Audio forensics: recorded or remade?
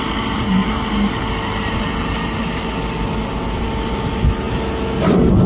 recorded